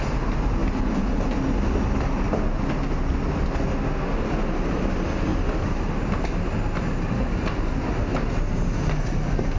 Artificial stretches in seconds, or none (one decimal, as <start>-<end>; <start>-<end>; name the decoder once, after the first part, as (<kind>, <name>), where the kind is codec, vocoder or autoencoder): none